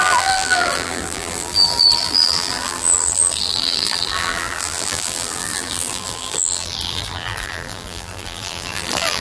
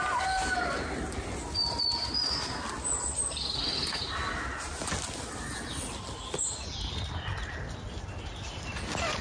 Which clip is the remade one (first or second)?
first